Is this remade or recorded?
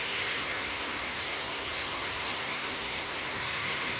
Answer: remade